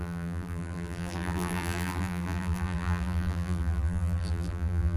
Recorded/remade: remade